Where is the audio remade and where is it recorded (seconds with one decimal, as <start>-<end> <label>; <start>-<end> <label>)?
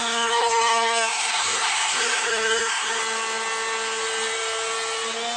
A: 0.0-3.0 remade; 3.0-5.4 recorded